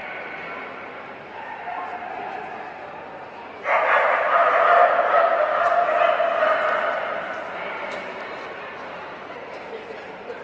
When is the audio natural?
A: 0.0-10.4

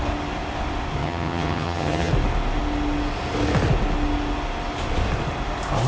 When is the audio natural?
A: 0.0-1.0; 2.1-5.9